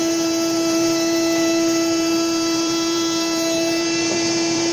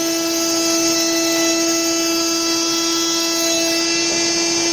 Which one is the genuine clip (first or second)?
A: second